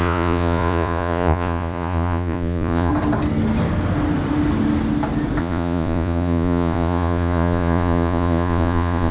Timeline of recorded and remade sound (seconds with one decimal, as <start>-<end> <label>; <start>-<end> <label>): 0.0-2.9 remade; 2.9-5.4 recorded; 5.4-9.1 remade

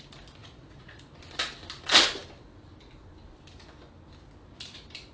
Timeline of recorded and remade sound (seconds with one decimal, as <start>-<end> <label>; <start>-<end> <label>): 0.0-0.4 recorded; 0.4-1.0 remade; 1.0-5.1 recorded

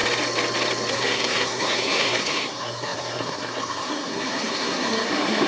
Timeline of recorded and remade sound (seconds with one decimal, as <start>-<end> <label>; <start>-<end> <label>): 0.0-0.9 recorded; 0.9-5.5 remade

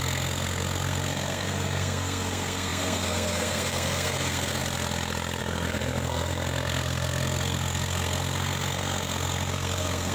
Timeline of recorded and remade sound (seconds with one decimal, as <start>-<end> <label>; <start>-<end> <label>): 0.0-4.6 remade; 4.6-5.4 recorded; 5.4-10.1 remade

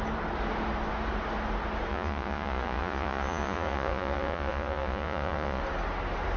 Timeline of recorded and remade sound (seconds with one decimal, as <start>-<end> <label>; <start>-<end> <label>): 0.0-1.9 recorded; 1.9-5.6 remade; 5.6-6.4 recorded

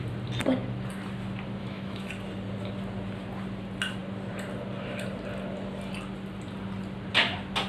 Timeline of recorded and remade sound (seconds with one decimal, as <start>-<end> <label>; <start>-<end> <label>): 0.0-1.6 recorded; 1.6-2.1 remade; 2.1-7.7 recorded

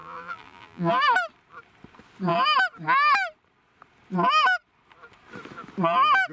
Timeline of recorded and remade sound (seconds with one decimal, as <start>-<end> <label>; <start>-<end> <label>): 0.0-0.9 remade; 0.9-6.3 recorded

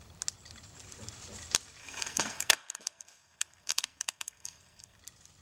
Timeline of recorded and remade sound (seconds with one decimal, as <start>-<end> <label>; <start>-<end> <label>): 0.0-1.8 recorded; 1.8-5.0 remade; 5.0-5.4 recorded